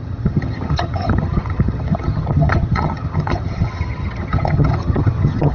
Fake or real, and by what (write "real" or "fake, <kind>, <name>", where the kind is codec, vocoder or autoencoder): fake, vocoder, HiFi-GAN